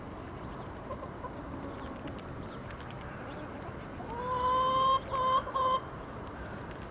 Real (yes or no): yes